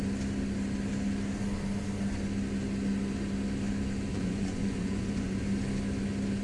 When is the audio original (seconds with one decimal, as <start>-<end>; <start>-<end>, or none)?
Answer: 0.0-4.1; 5.4-6.4